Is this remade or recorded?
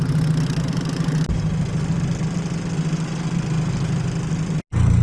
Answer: recorded